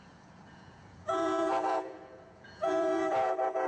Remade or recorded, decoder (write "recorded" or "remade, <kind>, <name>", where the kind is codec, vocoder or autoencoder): remade, vocoder, Vocos